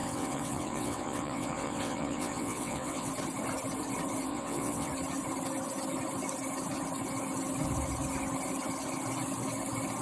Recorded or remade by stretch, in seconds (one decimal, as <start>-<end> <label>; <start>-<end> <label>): 0.0-3.1 remade; 3.1-4.3 recorded; 4.3-4.9 remade; 4.9-10.0 recorded